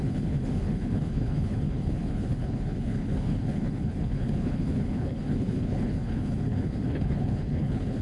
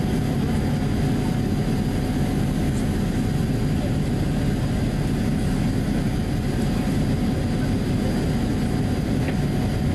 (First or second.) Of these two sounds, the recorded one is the second